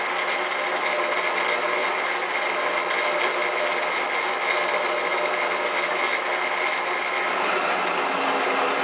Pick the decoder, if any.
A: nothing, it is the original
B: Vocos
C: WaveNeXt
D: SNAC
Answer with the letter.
A